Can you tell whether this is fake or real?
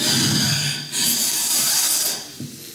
real